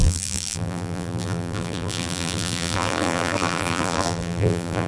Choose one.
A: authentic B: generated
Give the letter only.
B